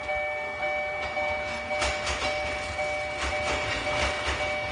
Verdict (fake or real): real